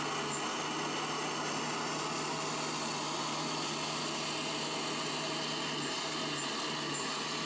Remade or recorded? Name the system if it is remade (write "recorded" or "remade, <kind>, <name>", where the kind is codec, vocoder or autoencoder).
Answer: recorded